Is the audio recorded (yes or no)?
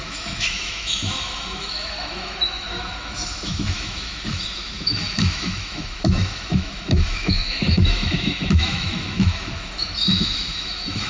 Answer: no